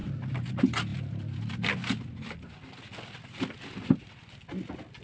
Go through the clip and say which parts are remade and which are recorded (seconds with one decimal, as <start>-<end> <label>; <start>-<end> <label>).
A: 0.0-5.0 recorded

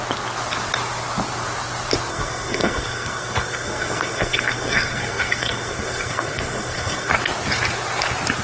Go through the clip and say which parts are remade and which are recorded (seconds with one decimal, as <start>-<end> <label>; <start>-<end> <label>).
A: 0.0-2.1 recorded; 2.1-7.1 remade; 7.1-8.4 recorded

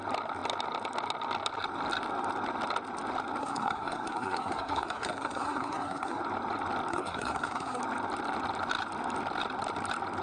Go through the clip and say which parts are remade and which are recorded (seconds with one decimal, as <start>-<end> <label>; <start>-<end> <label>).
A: 0.0-3.4 recorded; 3.4-6.2 remade; 6.2-6.9 recorded; 6.9-7.8 remade; 7.8-10.2 recorded